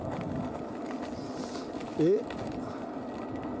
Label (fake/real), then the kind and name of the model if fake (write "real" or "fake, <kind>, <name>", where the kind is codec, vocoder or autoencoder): real